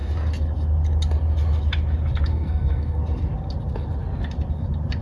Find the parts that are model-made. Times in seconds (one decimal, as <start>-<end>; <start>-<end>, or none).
2.3-3.0